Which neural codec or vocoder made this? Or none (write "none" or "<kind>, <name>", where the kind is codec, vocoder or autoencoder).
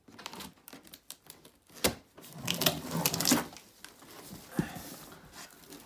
none